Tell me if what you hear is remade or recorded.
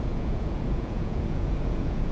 remade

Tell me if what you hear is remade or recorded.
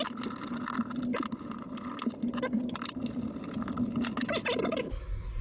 recorded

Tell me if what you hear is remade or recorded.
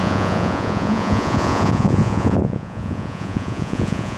remade